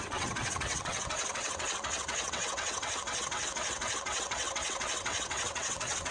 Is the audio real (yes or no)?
no